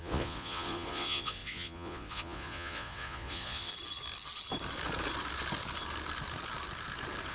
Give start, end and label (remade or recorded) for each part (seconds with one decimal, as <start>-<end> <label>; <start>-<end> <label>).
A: 0.0-3.7 remade; 3.7-7.3 recorded